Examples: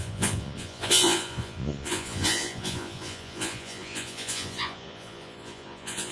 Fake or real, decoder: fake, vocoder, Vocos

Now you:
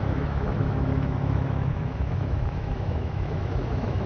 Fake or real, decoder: fake, autoencoder, DAC-VAE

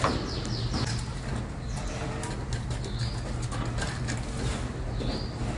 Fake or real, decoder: real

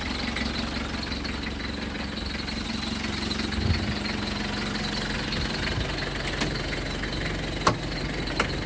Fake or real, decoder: real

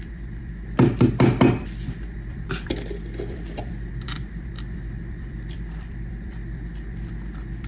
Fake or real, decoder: fake, vocoder, BigVGAN v2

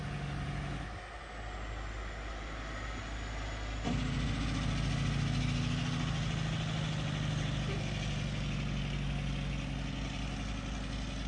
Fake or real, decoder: real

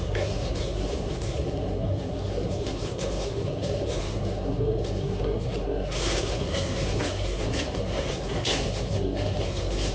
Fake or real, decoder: fake, codec, SNAC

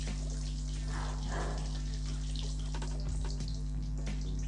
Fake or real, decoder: real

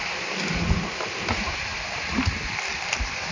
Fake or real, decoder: real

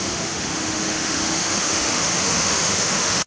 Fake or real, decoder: fake, autoencoder, DAC-VAE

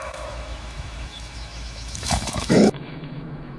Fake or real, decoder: fake, autoencoder, DAC-VAE